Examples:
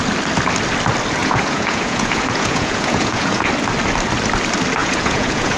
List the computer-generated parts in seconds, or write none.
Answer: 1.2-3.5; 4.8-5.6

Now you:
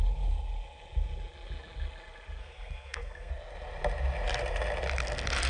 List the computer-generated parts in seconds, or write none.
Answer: 2.4-3.3

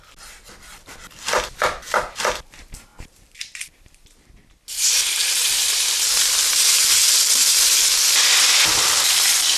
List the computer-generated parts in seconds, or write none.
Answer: none

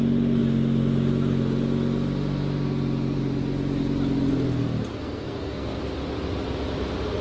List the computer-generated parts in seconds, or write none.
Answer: 4.9-5.8